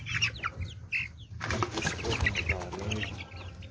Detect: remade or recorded recorded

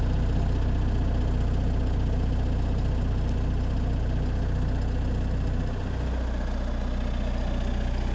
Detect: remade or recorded recorded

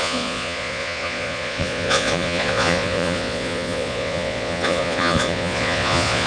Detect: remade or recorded remade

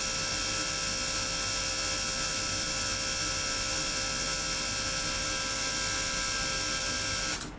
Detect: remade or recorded recorded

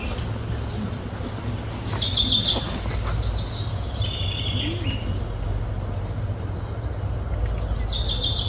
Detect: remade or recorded recorded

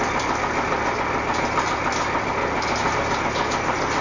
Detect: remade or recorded recorded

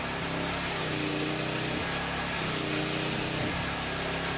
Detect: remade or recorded recorded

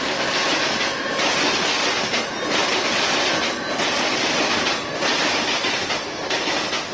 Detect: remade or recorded recorded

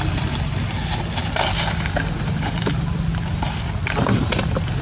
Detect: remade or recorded recorded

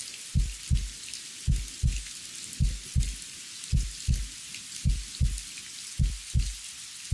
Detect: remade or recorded recorded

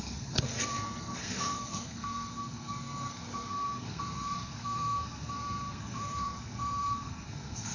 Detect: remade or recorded remade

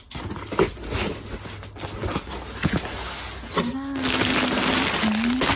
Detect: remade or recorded recorded